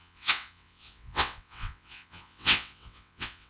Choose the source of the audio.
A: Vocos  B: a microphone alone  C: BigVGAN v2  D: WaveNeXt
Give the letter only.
D